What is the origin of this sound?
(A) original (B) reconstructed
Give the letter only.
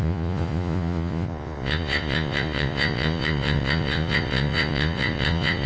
B